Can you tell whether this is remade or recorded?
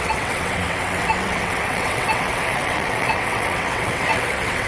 remade